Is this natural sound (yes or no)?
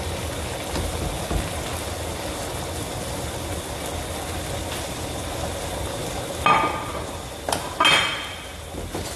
yes